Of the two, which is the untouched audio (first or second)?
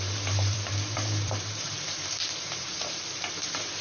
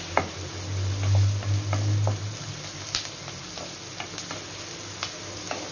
second